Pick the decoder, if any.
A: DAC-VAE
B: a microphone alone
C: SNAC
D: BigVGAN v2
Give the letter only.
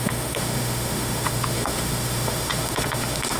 A